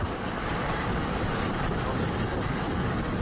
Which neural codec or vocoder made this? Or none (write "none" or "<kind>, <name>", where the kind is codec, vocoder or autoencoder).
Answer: codec, DAC